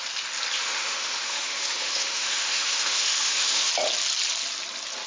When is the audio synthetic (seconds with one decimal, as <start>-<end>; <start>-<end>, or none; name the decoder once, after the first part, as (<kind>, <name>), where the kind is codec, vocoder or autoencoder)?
0.6-3.7 (autoencoder, DAC-VAE)